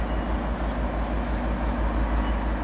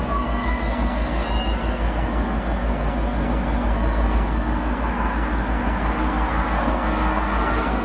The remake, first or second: second